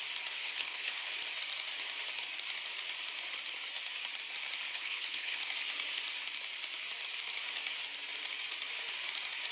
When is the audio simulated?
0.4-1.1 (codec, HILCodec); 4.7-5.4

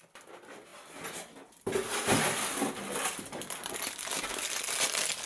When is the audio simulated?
none

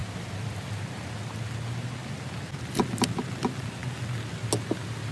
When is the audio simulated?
none

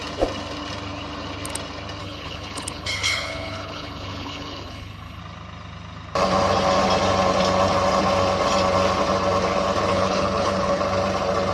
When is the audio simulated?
2.0-5.2 (codec, HILCodec); 9.9-10.8

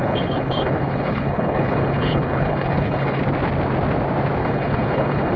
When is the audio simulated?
0.0-3.2 (codec, HILCodec); 4.4-5.4

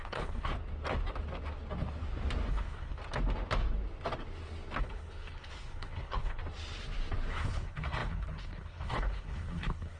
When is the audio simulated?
0.0-0.5 (codec, HILCodec); 2.5-3.0; 4.8-6.4; 7.3-10.0